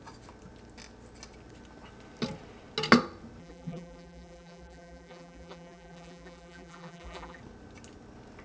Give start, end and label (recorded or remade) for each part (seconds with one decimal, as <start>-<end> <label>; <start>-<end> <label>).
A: 0.0-3.4 recorded; 3.4-7.4 remade; 7.4-8.4 recorded